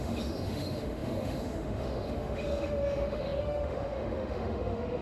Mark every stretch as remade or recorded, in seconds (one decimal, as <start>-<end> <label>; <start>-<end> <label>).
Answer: 0.0-5.0 remade